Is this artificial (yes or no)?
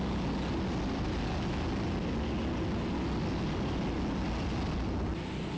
no